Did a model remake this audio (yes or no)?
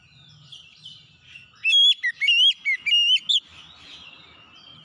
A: no